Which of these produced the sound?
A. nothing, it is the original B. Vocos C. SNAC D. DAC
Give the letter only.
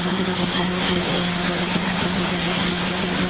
C